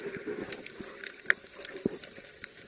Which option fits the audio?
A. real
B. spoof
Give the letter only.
A